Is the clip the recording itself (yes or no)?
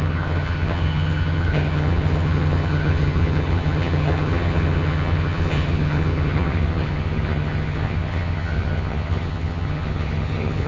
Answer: no